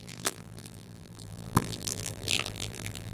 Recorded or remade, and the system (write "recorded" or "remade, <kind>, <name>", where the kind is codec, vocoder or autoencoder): remade, vocoder, BigVGAN v2